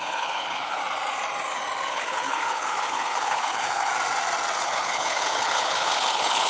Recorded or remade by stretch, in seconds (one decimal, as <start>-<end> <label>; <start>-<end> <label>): 0.0-0.8 remade; 0.8-1.9 recorded; 1.9-3.9 remade; 3.9-4.6 recorded; 4.6-6.5 remade